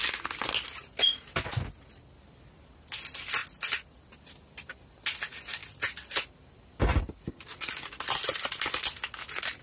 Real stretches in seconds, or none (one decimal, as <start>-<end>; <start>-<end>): 0.0-9.6